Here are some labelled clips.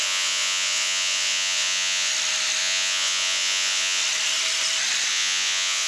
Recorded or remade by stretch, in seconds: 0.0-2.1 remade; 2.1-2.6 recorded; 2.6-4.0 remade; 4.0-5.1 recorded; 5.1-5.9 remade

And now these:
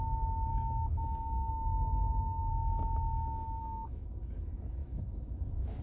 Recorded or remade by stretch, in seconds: 0.0-2.5 remade; 2.5-3.6 recorded; 3.6-5.8 remade